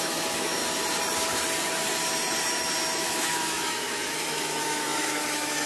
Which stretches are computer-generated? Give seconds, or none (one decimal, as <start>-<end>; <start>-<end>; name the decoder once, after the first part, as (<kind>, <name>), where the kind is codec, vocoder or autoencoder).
0.0-0.6 (autoencoder, DAC-VAE); 3.0-5.7